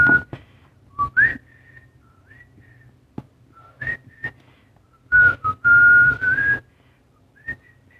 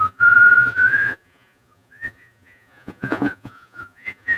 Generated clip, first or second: second